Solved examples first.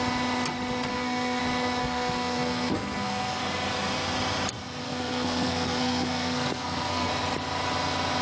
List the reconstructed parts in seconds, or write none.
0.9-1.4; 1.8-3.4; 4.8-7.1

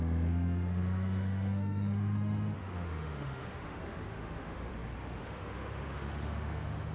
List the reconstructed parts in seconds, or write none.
0.0-4.7; 5.2-6.9

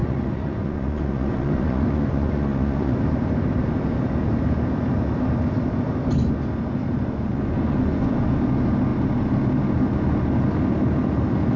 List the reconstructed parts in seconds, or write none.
0.0-3.0; 7.3-8.1